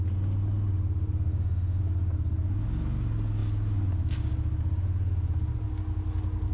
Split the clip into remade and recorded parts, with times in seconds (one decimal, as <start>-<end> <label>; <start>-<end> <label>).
0.0-1.3 recorded; 1.3-1.8 remade; 1.8-6.5 recorded